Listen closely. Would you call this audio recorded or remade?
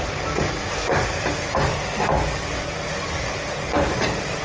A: recorded